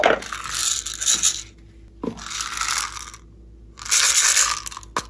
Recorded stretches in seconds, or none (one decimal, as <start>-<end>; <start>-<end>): 0.0-5.1